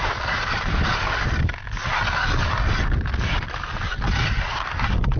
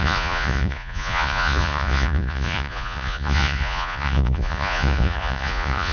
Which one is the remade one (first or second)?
second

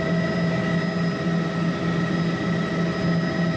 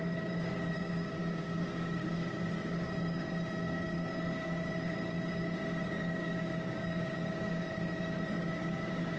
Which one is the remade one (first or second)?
second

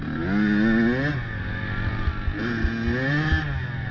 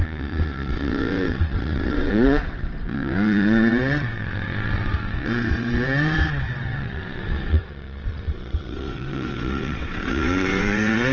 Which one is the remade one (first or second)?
second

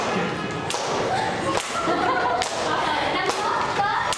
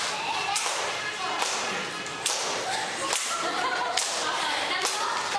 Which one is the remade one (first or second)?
second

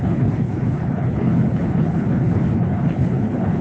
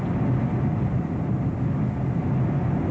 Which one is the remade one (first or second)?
first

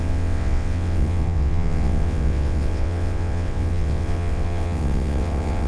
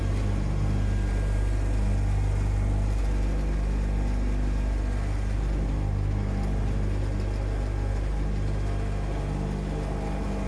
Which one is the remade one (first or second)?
first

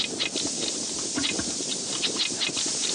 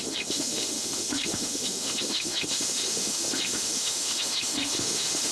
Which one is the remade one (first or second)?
second